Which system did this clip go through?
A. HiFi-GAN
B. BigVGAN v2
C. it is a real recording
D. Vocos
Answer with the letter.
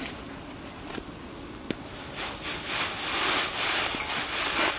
C